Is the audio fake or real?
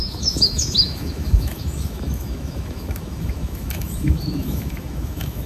fake